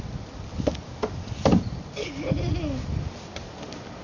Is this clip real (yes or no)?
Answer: yes